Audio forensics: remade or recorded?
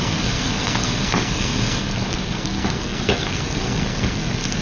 remade